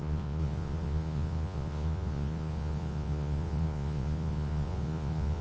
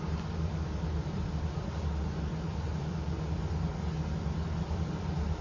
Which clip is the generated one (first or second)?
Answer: first